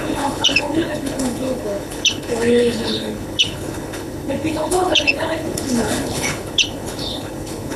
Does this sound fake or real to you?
fake